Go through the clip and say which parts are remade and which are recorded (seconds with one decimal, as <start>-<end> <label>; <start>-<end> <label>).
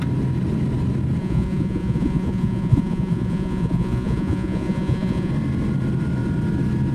0.0-1.2 recorded; 1.2-5.3 remade; 5.3-6.9 recorded